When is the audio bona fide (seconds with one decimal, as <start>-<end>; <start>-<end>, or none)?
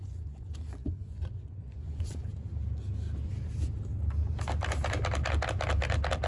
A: 2.3-6.3